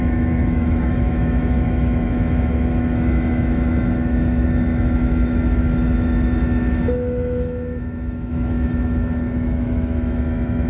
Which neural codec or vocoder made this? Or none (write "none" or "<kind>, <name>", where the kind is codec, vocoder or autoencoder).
autoencoder, DAC-VAE